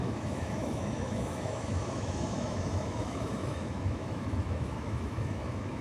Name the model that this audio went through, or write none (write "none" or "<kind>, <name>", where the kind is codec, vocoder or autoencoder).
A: autoencoder, DAC-VAE